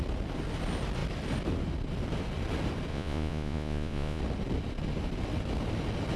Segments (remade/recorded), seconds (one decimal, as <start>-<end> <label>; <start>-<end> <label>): 0.0-2.9 recorded; 2.9-4.2 remade; 4.2-6.2 recorded